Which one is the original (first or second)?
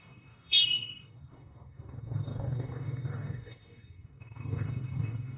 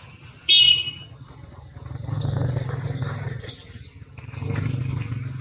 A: second